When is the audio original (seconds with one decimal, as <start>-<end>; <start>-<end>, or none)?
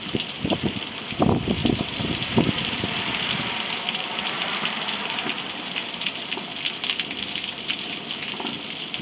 0.0-1.6; 6.1-9.0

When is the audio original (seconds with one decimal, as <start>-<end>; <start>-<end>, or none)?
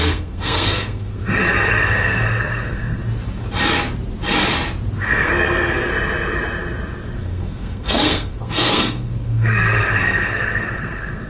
1.2-1.7; 3.0-5.0; 5.9-7.2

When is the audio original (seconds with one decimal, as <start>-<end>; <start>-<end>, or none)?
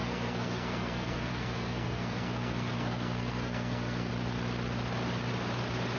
4.1-6.0